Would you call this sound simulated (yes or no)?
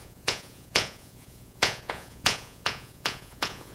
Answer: yes